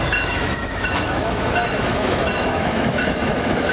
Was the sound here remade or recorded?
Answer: remade